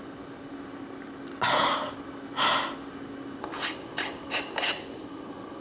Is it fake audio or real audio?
real